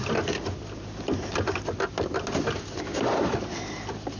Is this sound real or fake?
real